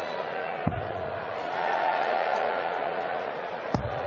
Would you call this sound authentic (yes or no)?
no